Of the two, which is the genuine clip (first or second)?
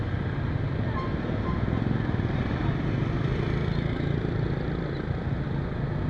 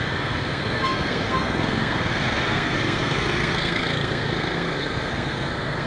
first